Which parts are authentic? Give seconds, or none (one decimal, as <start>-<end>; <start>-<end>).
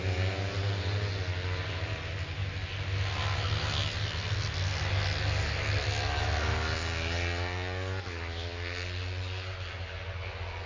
0.0-10.7